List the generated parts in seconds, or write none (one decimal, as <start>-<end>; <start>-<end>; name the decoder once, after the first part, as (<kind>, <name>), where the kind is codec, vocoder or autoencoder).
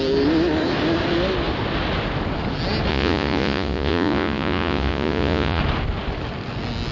2.9-5.6 (vocoder, Vocos)